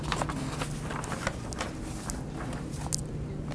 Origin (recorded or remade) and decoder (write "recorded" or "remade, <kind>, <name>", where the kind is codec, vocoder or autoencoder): recorded